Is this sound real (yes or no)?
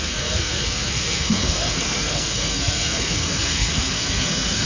no